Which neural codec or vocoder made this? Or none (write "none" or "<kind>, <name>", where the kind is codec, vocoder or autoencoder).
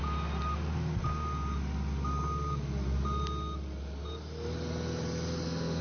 none